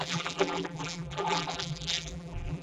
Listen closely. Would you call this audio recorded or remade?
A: remade